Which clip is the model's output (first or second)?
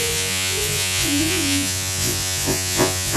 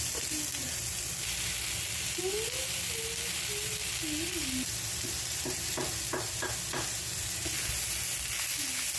first